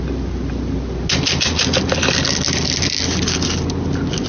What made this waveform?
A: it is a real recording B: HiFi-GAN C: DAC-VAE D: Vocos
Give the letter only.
A